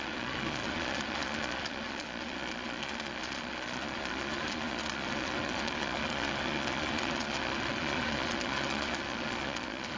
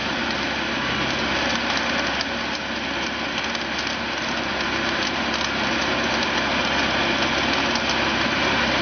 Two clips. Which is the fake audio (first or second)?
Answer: first